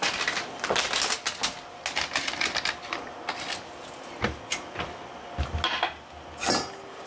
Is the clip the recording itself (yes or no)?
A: yes